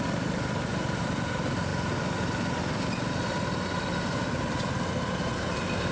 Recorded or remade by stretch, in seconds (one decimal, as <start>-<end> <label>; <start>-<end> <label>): 0.0-5.9 recorded